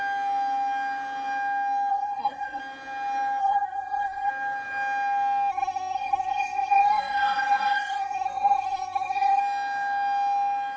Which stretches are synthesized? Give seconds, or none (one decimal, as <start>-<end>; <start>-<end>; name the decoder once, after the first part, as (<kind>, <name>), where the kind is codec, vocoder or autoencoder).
1.9-2.6 (codec, SNAC); 3.4-4.3; 5.5-9.4